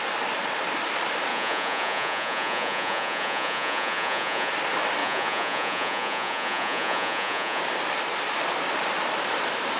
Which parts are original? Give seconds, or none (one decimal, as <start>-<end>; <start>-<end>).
0.0-1.3; 4.5-5.0; 7.6-9.8